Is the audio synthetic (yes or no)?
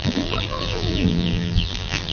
yes